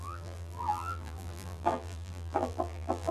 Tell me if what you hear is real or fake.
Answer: fake